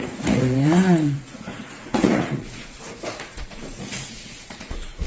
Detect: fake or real fake